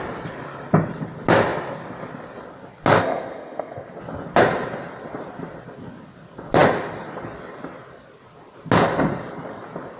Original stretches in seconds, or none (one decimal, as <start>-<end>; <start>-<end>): 0.0-3.0; 4.0-10.0